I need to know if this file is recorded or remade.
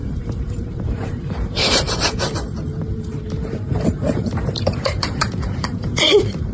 remade